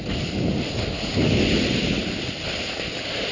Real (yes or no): yes